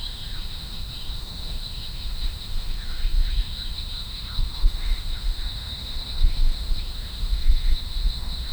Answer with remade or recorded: remade